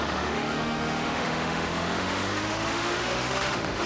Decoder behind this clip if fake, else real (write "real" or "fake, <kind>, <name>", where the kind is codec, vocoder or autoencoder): fake, autoencoder, DAC-VAE